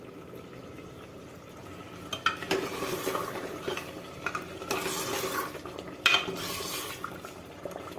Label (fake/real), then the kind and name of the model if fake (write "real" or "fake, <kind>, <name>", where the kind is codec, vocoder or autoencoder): real